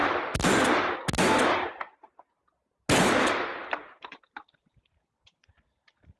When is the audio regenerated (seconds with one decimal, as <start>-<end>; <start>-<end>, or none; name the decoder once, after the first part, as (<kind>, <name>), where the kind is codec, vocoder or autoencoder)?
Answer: 3.3-6.2 (vocoder, BigVGAN v2)